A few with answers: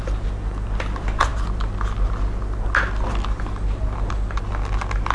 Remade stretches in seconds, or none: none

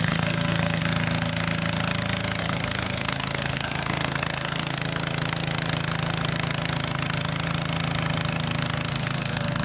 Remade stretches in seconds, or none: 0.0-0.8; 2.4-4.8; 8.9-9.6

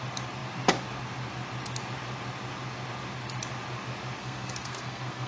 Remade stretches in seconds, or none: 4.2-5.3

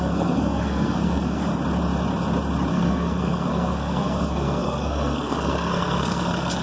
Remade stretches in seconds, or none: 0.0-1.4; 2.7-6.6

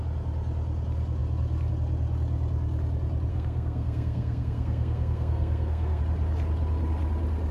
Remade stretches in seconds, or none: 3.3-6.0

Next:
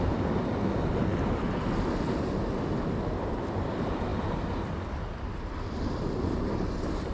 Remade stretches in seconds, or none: none